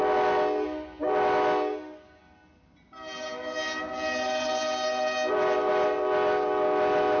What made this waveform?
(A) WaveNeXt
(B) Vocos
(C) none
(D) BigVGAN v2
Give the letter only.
C